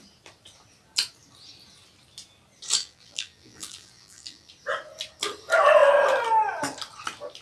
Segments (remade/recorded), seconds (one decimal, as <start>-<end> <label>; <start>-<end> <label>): 0.0-2.8 recorded; 2.8-4.5 remade; 4.5-7.4 recorded

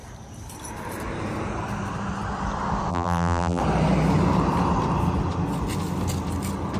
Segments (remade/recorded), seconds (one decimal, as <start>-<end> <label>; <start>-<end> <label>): 0.0-2.9 recorded; 2.9-3.6 remade; 3.6-6.8 recorded

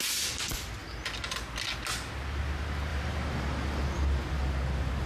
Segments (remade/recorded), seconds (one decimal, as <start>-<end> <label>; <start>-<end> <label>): 0.0-2.9 recorded; 2.9-3.8 remade; 3.8-5.1 recorded

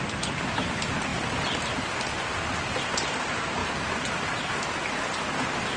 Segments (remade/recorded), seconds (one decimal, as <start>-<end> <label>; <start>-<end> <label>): 0.0-1.1 recorded; 1.1-1.7 remade; 1.7-2.1 recorded; 2.1-2.8 remade; 2.8-5.8 recorded

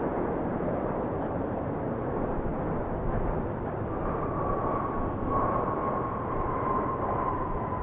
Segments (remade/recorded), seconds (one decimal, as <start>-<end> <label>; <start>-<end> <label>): 0.0-2.5 remade; 2.5-6.6 recorded; 6.6-7.8 remade

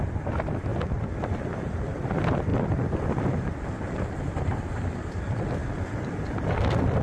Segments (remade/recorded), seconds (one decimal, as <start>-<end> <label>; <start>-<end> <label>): 0.0-0.7 recorded; 0.7-2.1 remade; 2.1-2.5 recorded; 2.5-5.1 remade; 5.1-5.6 recorded; 5.6-7.0 remade